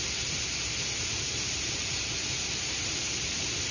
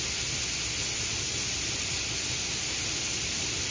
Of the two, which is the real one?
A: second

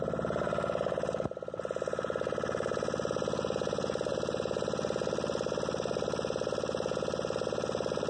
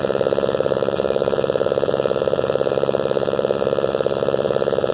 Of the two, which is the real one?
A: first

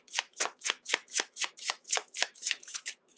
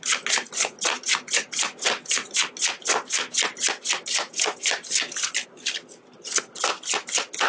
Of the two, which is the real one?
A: second